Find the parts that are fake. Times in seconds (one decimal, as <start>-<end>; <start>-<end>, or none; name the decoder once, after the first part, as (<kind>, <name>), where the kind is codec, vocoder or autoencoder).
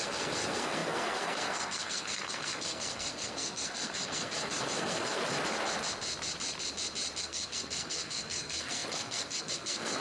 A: 0.0-5.2 (codec, SNAC); 7.2-10.0